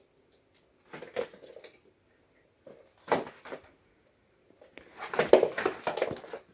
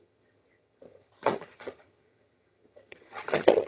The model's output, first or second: second